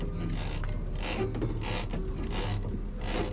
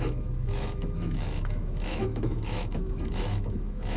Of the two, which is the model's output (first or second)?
second